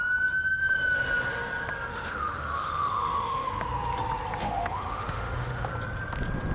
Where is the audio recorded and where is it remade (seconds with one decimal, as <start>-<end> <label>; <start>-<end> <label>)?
0.0-1.9 recorded; 1.9-3.5 remade; 3.5-4.4 recorded; 4.4-5.7 remade; 5.7-6.5 recorded